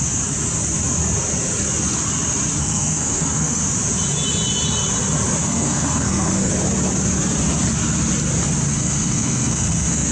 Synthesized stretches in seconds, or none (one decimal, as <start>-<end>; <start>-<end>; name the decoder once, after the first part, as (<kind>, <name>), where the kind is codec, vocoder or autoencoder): 2.6-3.6 (codec, SNAC); 5.4-6.5; 8.7-10.1